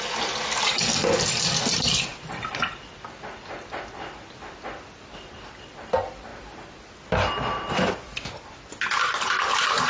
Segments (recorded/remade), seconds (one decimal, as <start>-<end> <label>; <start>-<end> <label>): 0.0-9.9 recorded